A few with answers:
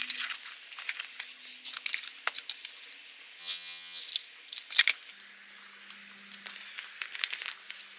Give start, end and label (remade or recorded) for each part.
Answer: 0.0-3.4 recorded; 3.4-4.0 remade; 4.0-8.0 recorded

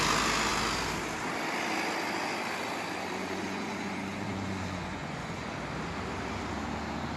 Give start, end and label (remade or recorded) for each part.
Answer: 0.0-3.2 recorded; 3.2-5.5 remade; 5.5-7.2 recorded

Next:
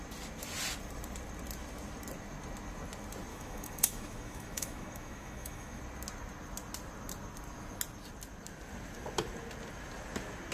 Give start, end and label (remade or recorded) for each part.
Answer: 0.0-3.3 recorded; 3.3-5.8 remade; 5.8-10.5 recorded

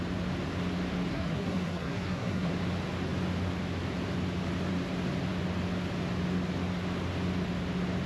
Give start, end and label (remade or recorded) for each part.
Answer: 0.0-1.1 recorded; 1.1-2.5 remade; 2.5-8.1 recorded

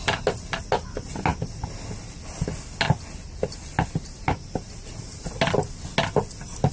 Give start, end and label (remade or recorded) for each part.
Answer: 0.0-6.7 recorded

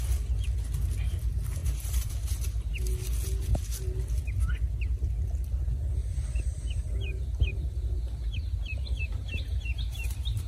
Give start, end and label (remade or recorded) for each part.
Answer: 0.0-1.6 recorded; 1.6-2.1 remade; 2.1-6.0 recorded; 6.0-10.5 remade

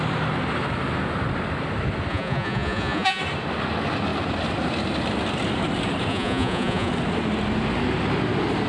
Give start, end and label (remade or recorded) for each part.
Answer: 0.0-2.1 recorded; 2.1-3.2 remade; 3.2-6.1 recorded; 6.1-6.9 remade; 6.9-8.7 recorded

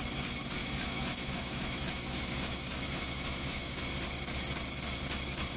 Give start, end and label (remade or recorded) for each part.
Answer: 0.0-0.6 recorded; 0.6-3.8 remade; 3.8-5.6 recorded